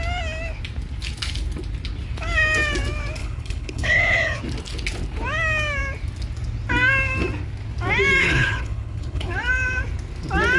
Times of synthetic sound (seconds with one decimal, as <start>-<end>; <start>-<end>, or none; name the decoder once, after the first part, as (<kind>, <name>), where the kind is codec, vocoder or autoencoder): 3.2-4.4 (codec, HILCodec); 8.2-9.3